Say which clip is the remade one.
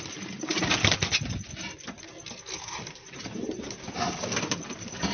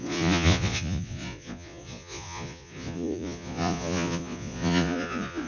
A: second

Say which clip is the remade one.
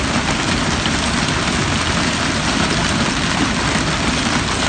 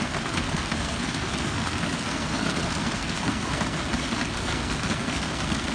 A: second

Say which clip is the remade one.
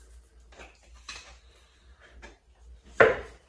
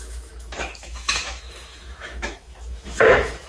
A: second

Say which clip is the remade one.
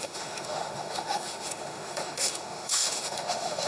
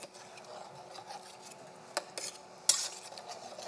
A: first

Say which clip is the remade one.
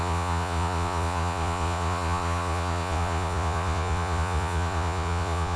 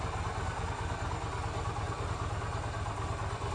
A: first